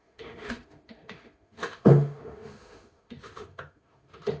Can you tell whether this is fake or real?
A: fake